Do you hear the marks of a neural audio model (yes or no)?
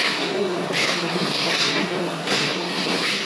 yes